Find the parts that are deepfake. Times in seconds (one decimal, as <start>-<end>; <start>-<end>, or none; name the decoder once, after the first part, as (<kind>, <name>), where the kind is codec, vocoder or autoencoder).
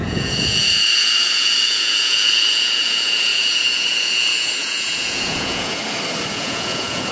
0.0-5.8 (vocoder, Vocos); 6.3-7.1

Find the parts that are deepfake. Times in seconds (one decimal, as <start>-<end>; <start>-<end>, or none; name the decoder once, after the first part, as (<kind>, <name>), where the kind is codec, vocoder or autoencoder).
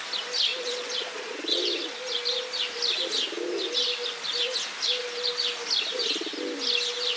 0.5-1.6 (vocoder, Vocos)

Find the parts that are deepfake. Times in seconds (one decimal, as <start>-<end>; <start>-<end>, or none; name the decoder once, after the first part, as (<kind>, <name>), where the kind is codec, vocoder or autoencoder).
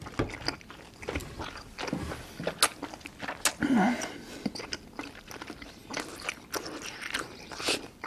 none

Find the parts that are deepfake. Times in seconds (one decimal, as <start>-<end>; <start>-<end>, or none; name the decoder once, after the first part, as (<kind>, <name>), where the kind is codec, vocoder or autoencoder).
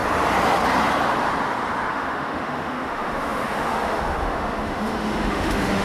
1.9-5.8 (autoencoder, DAC-VAE)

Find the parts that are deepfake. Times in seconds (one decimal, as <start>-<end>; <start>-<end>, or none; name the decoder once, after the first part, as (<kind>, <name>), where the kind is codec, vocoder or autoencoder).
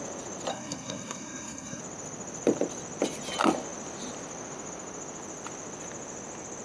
0.5-1.8 (codec, SNAC)